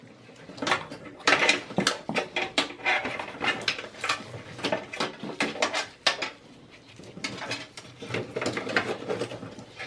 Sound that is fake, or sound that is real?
real